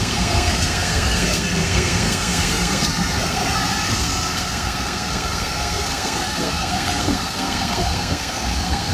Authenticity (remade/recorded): remade